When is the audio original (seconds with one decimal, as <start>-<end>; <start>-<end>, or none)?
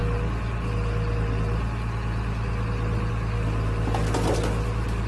0.0-5.1